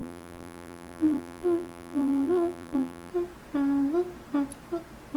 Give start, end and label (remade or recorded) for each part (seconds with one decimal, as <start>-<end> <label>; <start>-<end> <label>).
0.0-3.1 remade; 3.1-5.2 recorded